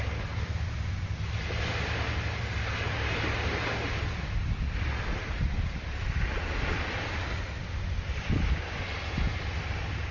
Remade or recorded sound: recorded